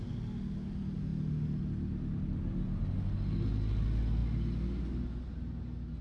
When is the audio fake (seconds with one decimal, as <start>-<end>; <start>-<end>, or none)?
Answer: none